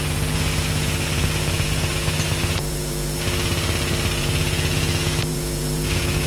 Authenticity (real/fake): fake